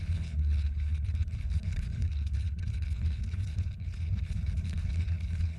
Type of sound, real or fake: fake